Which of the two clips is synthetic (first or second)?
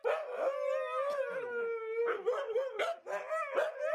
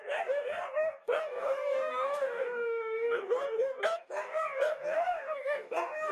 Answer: second